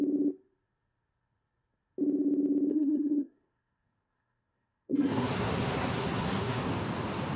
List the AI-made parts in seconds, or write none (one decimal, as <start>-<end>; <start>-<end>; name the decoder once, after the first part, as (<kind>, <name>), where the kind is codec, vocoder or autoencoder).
2.7-6.7 (codec, SNAC)